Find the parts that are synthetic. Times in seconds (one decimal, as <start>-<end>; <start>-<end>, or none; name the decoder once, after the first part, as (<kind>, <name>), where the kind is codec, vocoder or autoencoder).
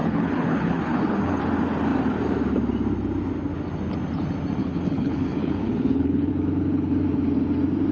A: 0.0-1.4 (codec, HILCodec); 4.6-6.3